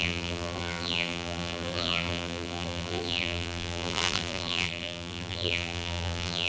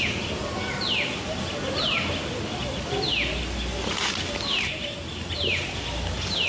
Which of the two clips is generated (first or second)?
first